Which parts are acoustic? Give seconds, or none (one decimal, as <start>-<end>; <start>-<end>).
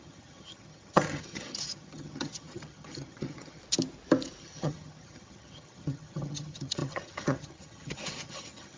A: 3.6-4.4